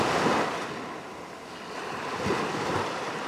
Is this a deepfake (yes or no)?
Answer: no